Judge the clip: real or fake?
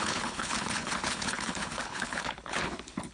fake